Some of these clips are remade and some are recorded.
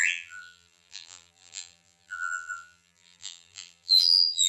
remade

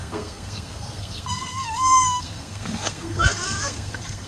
remade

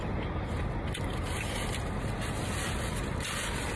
recorded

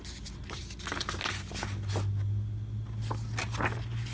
recorded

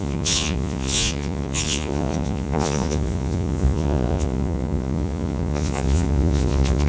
remade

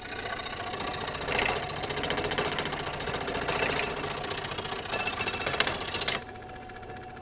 recorded